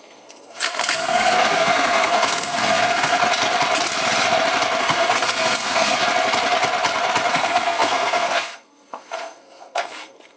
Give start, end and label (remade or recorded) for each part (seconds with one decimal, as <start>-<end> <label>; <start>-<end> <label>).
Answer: 0.0-3.2 remade; 3.2-4.8 recorded; 4.8-6.0 remade; 6.0-7.3 recorded; 7.3-10.4 remade